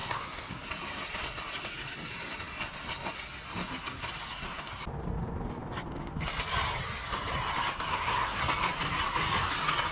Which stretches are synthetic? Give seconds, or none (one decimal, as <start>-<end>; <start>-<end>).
0.0-0.6; 7.9-8.4